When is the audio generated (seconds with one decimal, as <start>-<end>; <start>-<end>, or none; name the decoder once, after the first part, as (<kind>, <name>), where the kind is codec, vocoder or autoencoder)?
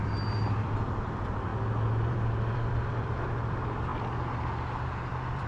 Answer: 0.0-1.5 (vocoder, BigVGAN v2); 2.1-3.9; 5.1-5.5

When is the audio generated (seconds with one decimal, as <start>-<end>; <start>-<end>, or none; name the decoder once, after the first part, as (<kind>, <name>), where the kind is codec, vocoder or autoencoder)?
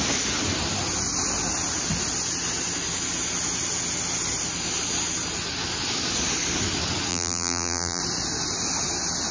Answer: 7.1-8.0 (vocoder, BigVGAN v2)